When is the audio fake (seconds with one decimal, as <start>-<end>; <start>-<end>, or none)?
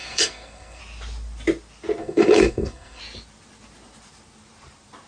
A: 0.0-0.8; 2.0-3.0